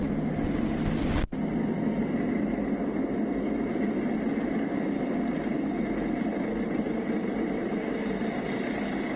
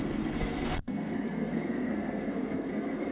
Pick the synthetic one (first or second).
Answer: second